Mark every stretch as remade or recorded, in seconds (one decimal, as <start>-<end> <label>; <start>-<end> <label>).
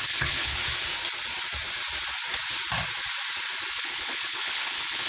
0.0-0.6 remade; 0.6-3.7 recorded; 3.7-5.1 remade